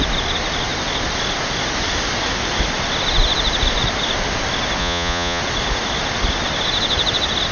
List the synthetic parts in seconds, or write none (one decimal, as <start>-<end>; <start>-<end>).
4.8-5.4